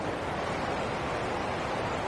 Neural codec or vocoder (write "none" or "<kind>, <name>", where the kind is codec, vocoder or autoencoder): none